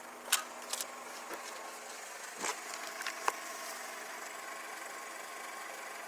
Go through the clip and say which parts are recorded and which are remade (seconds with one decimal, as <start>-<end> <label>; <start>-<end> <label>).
0.0-6.1 recorded